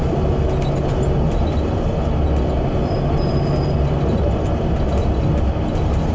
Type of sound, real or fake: real